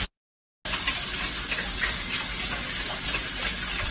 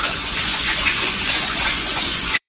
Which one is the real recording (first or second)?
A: first